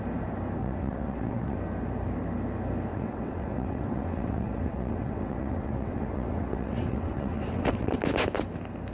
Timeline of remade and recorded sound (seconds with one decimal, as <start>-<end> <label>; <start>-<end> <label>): 0.0-0.6 recorded; 0.6-1.6 remade; 1.6-2.9 recorded; 2.9-8.0 remade; 8.0-8.9 recorded